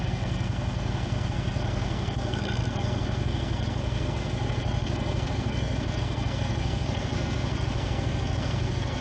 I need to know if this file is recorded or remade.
remade